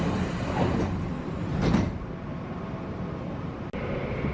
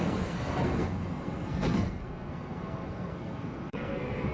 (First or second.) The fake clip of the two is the second